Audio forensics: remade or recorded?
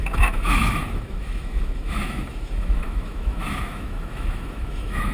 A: remade